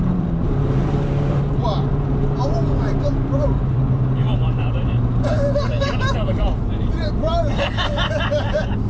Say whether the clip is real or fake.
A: fake